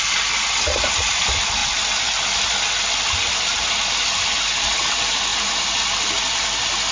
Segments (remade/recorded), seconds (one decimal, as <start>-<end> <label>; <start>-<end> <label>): 0.0-1.6 remade; 1.6-3.9 recorded; 3.9-6.9 remade